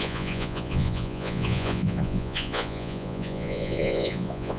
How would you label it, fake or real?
fake